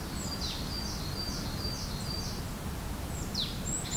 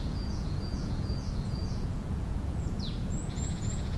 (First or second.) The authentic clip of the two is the first